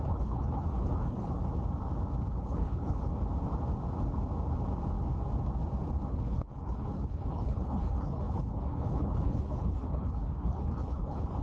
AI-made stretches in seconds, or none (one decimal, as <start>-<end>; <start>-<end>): 0.0-1.4; 2.4-3.1; 6.1-11.4